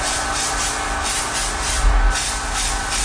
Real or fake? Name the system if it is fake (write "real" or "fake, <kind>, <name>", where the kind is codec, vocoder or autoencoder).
real